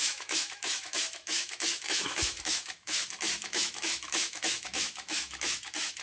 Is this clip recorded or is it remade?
remade